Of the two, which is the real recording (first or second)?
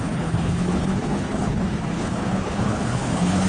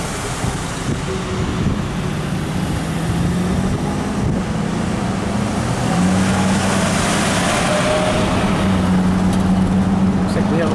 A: second